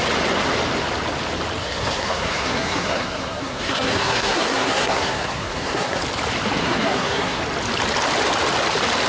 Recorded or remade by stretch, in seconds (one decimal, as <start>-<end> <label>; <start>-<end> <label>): 0.0-1.6 recorded; 1.6-6.0 remade; 6.0-6.6 recorded; 6.6-7.4 remade; 7.4-9.1 recorded